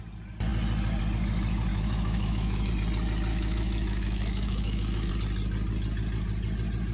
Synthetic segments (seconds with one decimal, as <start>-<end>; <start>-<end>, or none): 1.7-2.7; 3.3-5.1